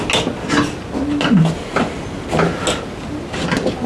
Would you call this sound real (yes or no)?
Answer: yes